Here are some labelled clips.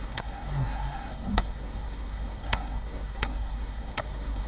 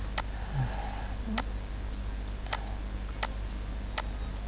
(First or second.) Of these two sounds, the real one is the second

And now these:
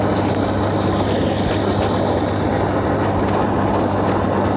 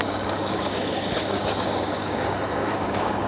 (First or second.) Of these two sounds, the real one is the first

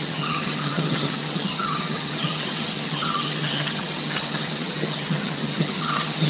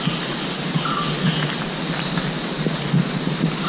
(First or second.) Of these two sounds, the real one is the second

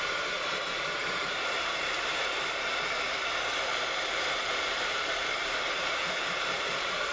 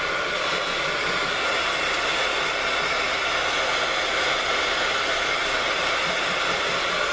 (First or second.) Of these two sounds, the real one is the second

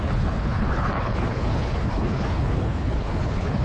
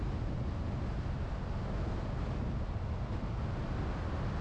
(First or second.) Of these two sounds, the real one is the second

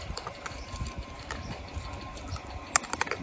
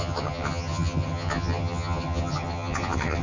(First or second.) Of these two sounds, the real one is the first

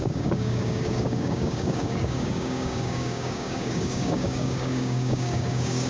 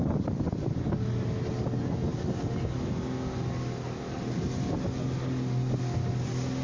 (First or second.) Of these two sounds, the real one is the second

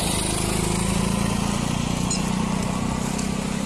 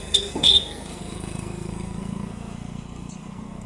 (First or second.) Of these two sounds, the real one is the first